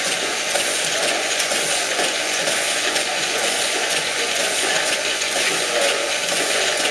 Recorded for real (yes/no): no